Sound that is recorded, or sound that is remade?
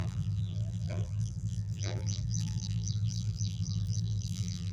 remade